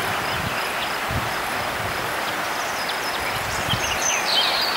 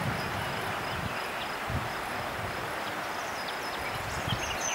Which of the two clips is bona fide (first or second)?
second